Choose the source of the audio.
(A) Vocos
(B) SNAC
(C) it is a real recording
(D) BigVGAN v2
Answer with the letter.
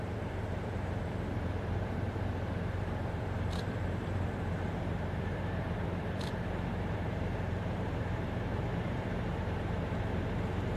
D